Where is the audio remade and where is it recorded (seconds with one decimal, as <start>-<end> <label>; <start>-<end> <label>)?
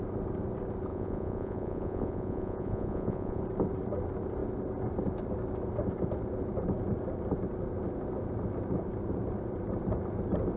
0.0-0.9 recorded; 0.9-3.4 remade; 3.4-10.6 recorded